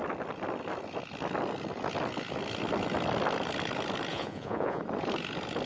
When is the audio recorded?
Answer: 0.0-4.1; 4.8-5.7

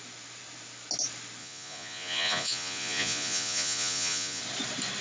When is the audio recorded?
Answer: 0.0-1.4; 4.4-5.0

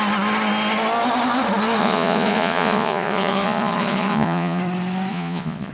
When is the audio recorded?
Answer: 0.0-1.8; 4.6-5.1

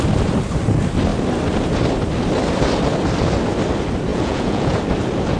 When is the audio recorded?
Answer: 0.0-4.1; 4.8-5.4

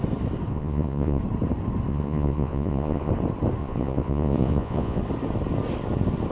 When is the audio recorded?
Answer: 0.0-0.5; 1.2-1.9; 3.1-3.6; 5.0-6.3